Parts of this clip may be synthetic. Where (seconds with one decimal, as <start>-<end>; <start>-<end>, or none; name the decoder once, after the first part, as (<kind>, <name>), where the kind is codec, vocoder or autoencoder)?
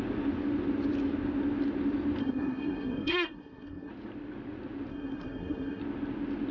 2.2-3.9 (codec, SNAC); 4.9-5.8